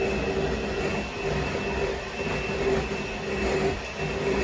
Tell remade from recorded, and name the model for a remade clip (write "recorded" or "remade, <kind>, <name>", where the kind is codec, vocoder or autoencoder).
recorded